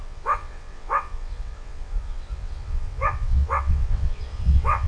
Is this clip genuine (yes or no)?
no